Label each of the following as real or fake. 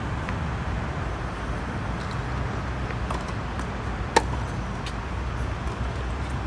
real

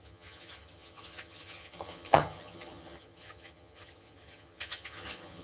fake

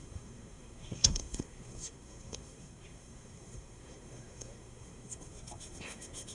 fake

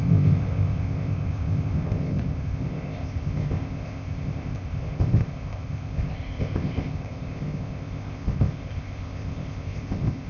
fake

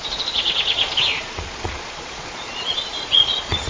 fake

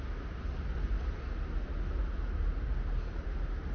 real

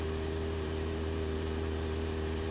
fake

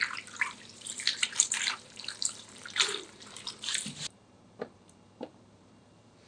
fake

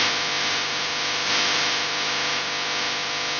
real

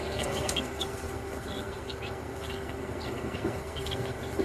fake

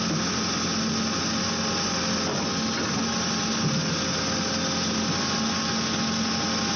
real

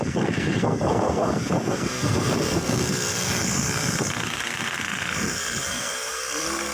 fake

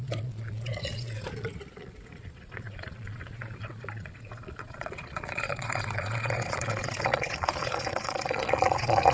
fake